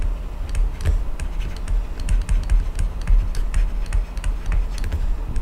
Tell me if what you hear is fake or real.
real